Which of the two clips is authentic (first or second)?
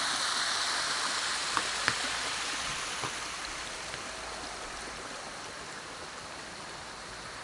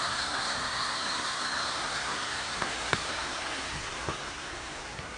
first